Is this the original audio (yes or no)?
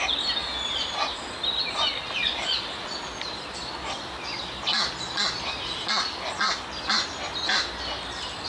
yes